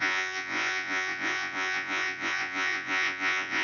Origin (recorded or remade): remade